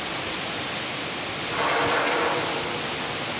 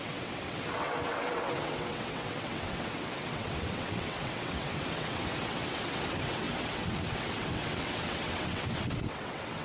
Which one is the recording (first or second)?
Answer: first